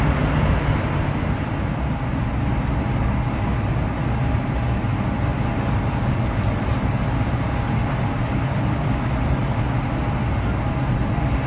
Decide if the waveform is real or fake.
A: real